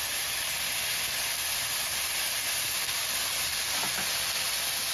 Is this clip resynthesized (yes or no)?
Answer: no